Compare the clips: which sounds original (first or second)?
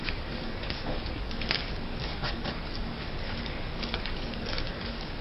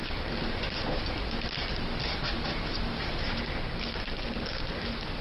second